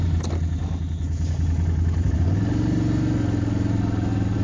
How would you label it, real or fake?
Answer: real